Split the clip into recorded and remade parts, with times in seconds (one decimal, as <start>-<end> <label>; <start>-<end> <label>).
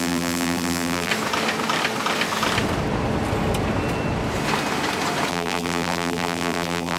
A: 0.0-1.1 remade; 1.1-5.3 recorded; 5.3-7.0 remade